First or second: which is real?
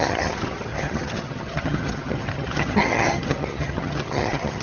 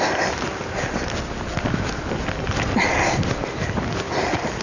second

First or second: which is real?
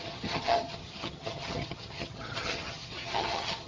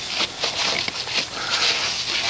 second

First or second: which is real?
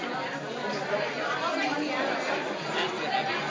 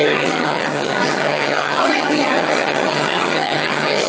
first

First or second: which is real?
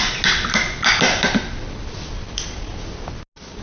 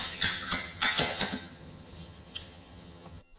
first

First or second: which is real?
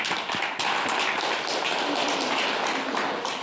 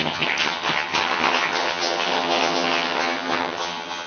first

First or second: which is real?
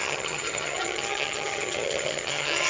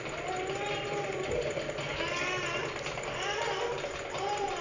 second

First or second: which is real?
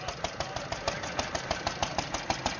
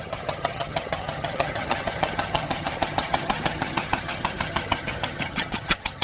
first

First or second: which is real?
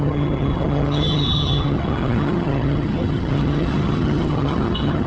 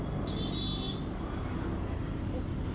second